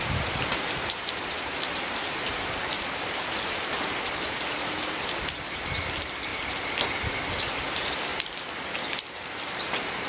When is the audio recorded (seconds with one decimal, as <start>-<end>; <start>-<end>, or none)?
6.3-7.7; 8.1-8.8